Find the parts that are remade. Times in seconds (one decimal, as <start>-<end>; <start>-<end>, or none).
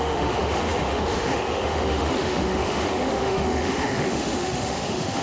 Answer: 0.0-5.2